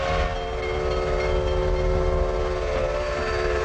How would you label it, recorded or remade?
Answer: recorded